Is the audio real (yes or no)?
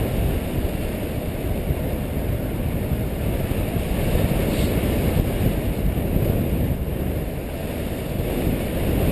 yes